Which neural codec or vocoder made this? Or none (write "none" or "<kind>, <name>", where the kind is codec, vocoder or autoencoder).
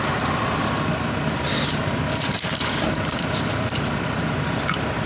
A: none